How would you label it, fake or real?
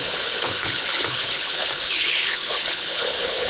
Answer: fake